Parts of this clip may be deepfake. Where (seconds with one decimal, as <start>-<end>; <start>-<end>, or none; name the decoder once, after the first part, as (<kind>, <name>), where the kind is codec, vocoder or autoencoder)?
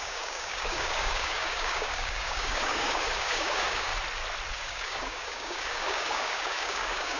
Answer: 0.0-3.9 (codec, DAC); 4.5-7.2